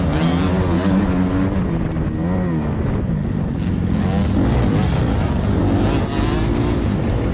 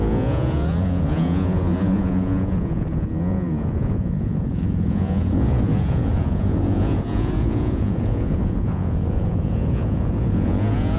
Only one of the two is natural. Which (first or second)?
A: first